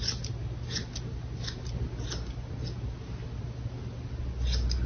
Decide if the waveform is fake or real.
real